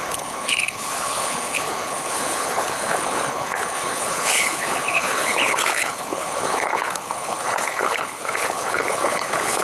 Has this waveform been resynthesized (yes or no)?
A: yes